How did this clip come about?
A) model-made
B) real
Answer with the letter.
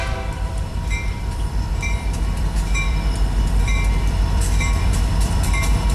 A